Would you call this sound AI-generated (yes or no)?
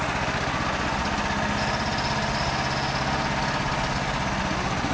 no